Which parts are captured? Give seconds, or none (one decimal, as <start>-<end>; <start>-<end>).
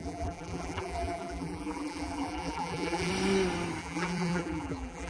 3.1-3.8